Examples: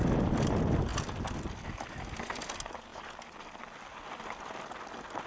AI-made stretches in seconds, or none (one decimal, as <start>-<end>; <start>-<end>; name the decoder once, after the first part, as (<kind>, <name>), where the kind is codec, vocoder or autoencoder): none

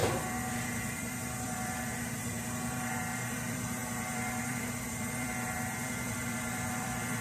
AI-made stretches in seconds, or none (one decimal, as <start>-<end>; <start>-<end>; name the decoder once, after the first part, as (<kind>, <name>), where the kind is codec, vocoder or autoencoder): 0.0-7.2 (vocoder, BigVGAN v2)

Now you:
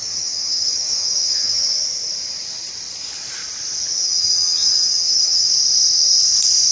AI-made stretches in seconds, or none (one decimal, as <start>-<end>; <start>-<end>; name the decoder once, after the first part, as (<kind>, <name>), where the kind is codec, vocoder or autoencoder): 0.0-1.7 (vocoder, HiFi-GAN); 3.9-5.5

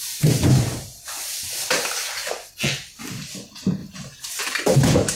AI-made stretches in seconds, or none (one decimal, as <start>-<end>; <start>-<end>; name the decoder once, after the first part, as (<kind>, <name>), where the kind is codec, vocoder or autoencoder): 0.0-0.9 (vocoder, BigVGAN v2); 1.5-2.2; 3.0-5.2